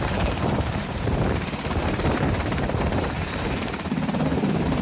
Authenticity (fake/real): fake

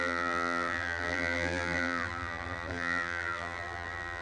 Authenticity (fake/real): fake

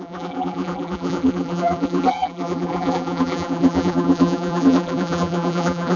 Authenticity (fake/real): fake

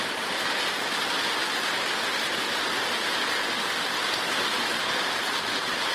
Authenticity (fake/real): real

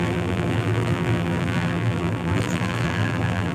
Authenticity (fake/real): fake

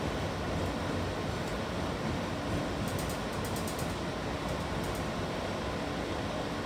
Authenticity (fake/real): real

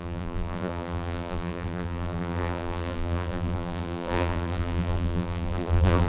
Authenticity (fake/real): fake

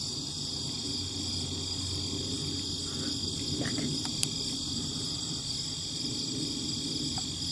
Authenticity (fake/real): real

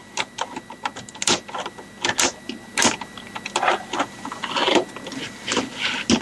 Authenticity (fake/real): real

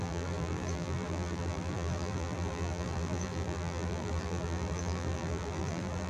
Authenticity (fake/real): fake